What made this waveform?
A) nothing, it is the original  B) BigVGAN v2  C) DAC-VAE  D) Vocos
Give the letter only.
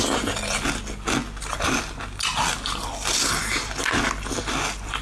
A